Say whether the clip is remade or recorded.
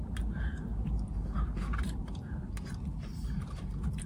remade